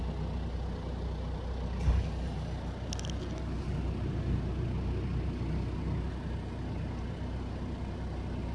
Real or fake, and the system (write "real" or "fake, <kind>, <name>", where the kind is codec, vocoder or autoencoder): real